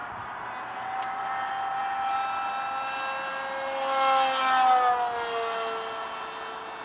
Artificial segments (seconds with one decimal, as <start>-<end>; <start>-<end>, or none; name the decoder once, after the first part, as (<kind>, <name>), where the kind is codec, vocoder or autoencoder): none